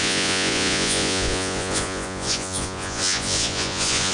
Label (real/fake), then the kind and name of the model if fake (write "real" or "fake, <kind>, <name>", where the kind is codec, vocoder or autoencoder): fake, vocoder, Vocos